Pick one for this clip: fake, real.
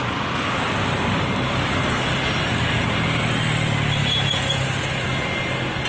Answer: real